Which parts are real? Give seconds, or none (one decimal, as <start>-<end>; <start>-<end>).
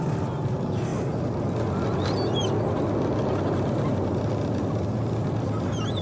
0.0-6.0